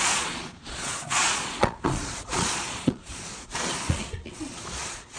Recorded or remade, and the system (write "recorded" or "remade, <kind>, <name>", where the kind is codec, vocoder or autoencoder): remade, vocoder, Vocos